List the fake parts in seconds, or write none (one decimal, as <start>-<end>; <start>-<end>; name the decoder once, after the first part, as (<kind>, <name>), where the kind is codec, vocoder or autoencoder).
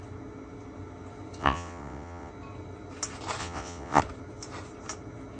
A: 1.4-2.3 (vocoder, WaveNeXt); 3.4-4.0